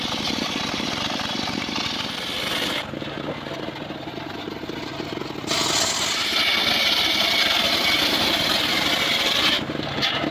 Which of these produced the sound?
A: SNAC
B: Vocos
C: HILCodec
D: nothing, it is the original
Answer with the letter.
D